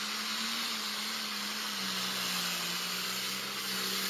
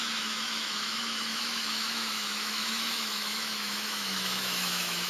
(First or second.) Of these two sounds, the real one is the first